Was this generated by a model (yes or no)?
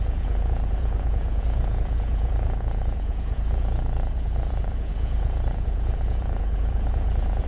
yes